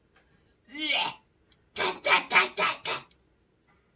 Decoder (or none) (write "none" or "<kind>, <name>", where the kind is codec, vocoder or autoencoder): none